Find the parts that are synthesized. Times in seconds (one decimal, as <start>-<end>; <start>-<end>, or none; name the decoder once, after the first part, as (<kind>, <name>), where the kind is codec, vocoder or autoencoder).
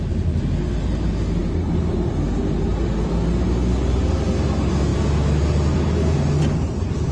none